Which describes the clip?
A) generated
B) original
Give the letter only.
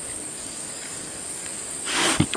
A